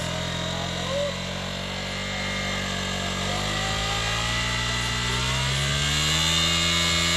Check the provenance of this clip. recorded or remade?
recorded